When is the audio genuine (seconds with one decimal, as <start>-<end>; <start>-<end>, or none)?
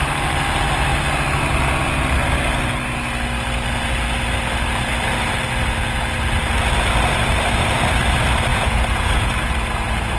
0.0-8.5; 9.3-10.2